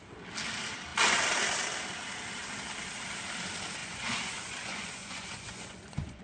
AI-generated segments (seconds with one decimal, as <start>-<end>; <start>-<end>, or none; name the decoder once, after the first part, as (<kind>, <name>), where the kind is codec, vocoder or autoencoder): 3.8-6.2 (vocoder, Vocos)